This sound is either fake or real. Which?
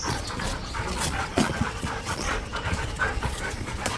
fake